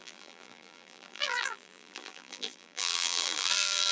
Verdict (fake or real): fake